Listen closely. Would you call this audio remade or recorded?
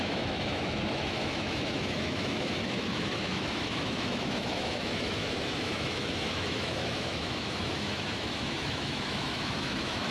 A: remade